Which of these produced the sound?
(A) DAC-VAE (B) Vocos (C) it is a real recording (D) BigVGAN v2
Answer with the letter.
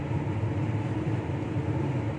C